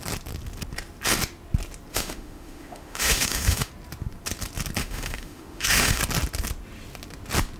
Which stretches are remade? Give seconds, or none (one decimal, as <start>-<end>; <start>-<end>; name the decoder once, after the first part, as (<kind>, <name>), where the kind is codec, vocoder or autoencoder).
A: 1.9-3.7 (autoencoder, DAC-VAE); 4.8-6.0